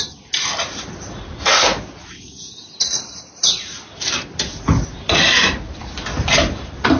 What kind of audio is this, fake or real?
real